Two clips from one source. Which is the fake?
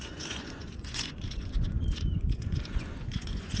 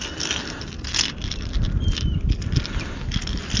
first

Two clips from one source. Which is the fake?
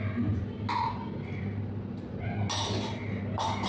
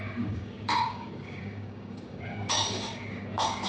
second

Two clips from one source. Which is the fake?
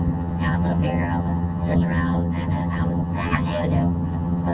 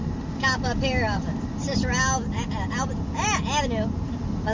first